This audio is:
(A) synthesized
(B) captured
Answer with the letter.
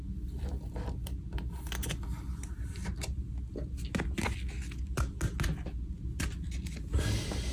B